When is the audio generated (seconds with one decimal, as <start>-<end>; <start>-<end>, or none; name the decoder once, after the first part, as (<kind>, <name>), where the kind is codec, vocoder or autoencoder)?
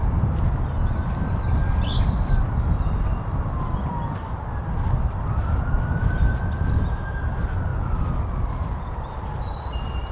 none